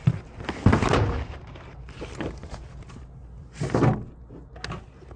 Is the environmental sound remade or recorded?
recorded